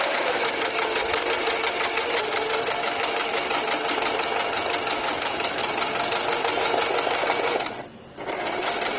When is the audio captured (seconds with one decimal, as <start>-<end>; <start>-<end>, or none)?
1.0-2.8; 3.3-4.9; 5.6-9.0